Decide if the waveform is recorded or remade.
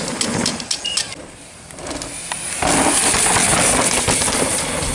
recorded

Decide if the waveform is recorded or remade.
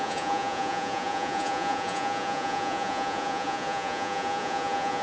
remade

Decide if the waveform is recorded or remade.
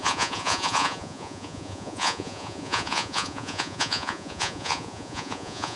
remade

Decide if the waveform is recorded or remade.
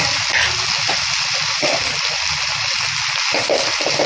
recorded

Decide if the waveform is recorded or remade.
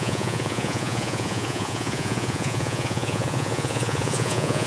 remade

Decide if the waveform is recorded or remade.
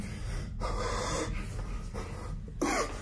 recorded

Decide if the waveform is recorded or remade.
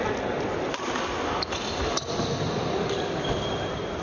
recorded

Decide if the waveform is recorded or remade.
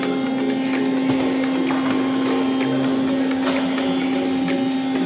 recorded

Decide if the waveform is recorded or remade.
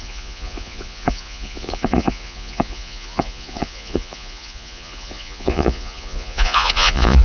remade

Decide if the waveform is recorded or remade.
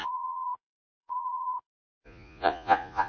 remade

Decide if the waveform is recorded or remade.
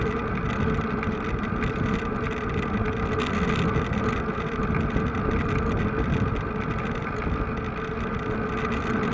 recorded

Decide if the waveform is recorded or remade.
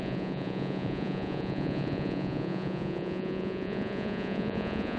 remade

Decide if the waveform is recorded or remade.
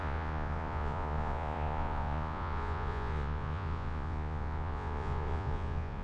remade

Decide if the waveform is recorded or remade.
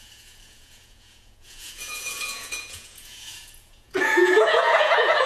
remade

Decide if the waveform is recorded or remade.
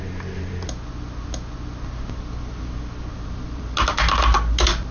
recorded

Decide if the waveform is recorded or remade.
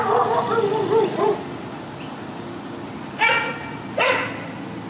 recorded